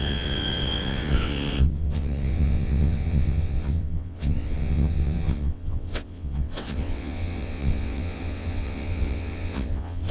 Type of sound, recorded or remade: remade